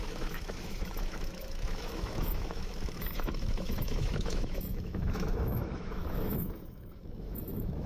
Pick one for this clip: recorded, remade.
remade